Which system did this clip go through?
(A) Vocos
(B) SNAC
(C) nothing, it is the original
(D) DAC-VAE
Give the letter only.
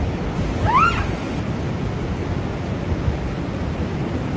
C